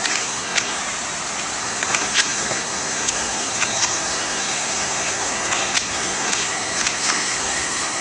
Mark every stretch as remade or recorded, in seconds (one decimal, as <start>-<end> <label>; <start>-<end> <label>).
0.0-0.8 remade; 0.8-1.6 recorded; 1.6-8.0 remade